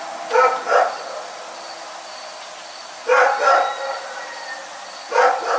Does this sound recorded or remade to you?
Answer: recorded